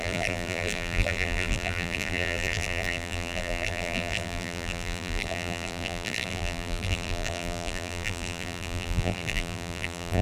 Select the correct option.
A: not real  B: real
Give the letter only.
A